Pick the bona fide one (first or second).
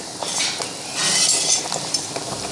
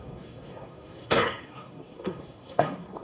first